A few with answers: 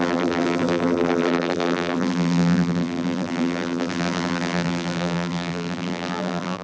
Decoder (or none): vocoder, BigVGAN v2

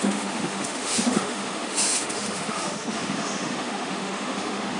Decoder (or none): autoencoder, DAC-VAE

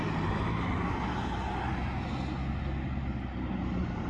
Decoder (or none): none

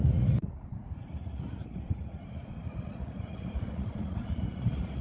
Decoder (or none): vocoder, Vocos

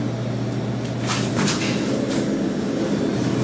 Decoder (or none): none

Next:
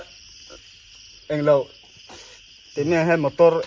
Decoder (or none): none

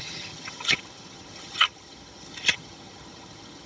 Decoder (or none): vocoder, HiFi-GAN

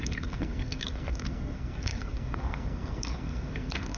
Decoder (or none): codec, SNAC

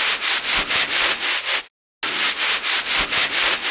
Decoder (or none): none